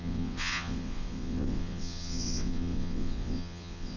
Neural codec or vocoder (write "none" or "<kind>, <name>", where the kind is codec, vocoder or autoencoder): vocoder, WaveNeXt